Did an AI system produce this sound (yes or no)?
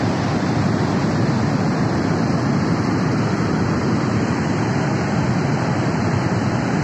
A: yes